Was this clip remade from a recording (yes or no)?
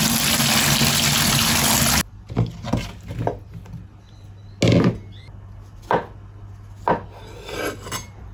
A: no